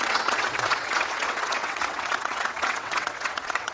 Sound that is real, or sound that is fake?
fake